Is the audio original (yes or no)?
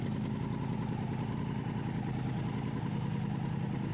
yes